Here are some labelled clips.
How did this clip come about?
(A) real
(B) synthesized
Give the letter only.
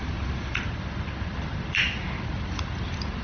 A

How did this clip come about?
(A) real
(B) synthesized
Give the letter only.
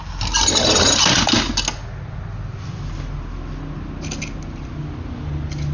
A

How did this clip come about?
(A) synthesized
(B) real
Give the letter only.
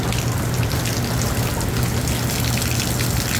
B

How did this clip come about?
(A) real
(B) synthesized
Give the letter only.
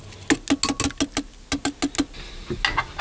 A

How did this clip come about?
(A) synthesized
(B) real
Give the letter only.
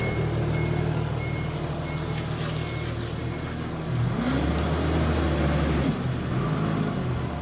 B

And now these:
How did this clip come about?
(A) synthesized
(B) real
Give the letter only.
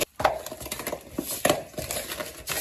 B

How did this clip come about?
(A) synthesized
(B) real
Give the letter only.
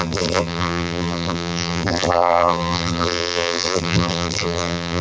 A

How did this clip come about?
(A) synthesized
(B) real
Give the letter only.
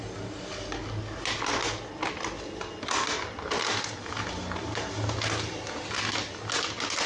B